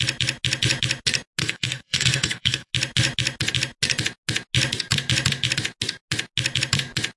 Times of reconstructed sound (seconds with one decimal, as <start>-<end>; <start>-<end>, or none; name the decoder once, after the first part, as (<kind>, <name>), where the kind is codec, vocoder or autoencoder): 1.4-2.7 (codec, SNAC)